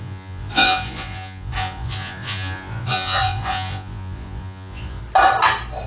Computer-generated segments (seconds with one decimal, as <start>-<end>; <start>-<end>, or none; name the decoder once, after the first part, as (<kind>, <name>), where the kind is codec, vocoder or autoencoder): 0.0-5.0 (vocoder, Vocos)